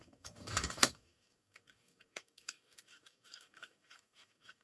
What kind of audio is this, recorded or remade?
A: remade